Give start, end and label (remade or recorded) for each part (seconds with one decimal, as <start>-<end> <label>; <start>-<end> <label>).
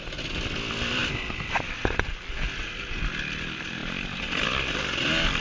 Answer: 0.0-5.4 recorded